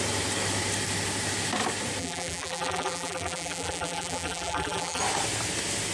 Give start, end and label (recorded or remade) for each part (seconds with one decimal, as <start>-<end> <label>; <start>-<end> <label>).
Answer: 0.0-2.0 recorded; 2.0-5.0 remade; 5.0-5.9 recorded